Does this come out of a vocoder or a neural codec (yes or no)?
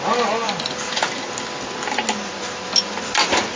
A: no